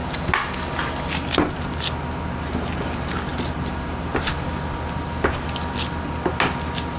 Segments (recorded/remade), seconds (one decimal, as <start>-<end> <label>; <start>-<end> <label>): 0.0-7.0 recorded